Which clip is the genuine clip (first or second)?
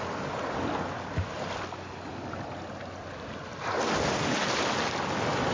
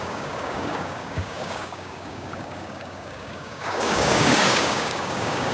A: first